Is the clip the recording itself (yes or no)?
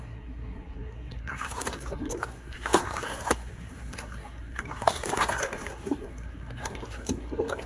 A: no